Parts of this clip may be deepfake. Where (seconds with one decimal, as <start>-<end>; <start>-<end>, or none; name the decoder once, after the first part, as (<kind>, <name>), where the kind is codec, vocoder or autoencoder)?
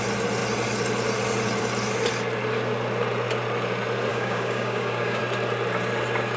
4.1-5.2 (codec, DAC)